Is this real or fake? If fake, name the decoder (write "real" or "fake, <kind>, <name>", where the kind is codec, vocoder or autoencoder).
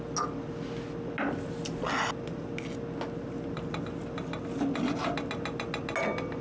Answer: real